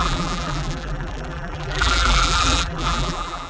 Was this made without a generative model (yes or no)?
no